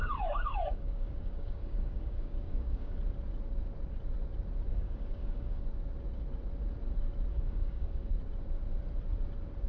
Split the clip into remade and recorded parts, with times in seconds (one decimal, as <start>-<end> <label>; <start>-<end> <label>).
0.0-3.0 remade; 3.0-4.7 recorded; 4.7-5.6 remade; 5.6-7.3 recorded; 7.3-8.1 remade; 8.1-9.7 recorded